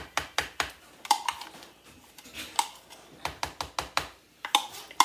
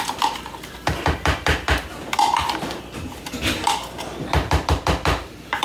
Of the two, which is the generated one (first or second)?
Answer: second